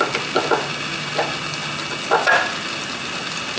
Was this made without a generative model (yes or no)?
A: yes